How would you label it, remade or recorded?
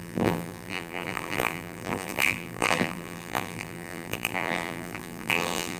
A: remade